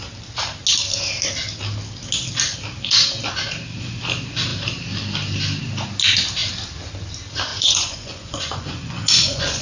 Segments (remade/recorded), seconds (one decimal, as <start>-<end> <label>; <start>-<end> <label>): 0.0-7.5 recorded; 7.5-9.6 remade